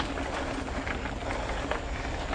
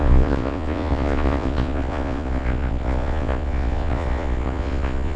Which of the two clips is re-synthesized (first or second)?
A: second